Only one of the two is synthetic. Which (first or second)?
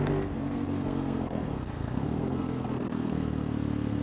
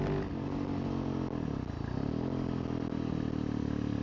first